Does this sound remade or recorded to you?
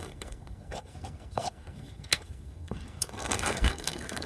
remade